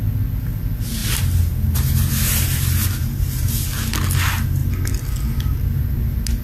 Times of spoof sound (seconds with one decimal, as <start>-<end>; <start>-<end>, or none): 1.0-3.5